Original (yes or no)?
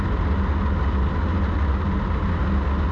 yes